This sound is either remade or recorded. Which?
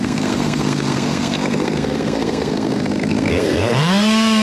remade